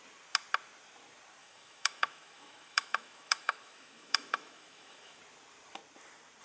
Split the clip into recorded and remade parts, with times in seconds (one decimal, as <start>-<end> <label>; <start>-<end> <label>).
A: 0.0-1.4 recorded; 1.4-5.2 remade; 5.2-6.4 recorded